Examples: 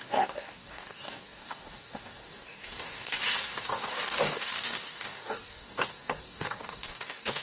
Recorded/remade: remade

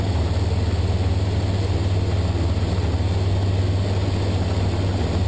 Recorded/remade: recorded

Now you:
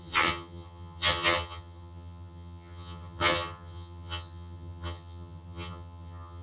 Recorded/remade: remade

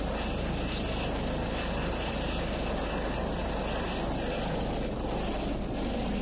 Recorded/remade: recorded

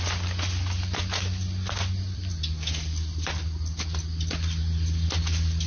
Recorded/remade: recorded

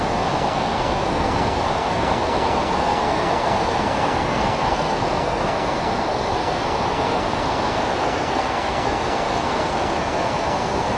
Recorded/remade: remade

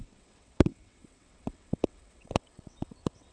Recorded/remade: remade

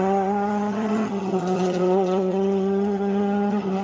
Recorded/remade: remade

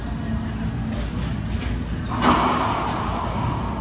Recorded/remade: recorded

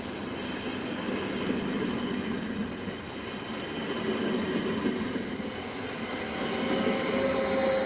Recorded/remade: recorded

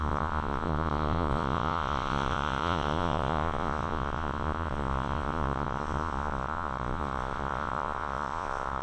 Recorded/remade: remade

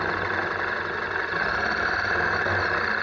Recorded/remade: recorded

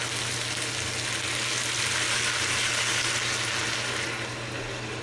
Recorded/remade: recorded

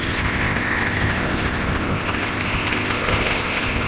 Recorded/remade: remade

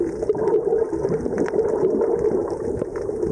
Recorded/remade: recorded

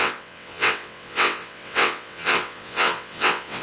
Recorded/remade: remade